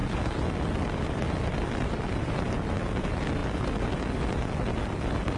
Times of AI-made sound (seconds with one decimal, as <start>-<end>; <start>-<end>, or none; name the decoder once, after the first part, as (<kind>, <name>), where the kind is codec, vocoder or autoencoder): none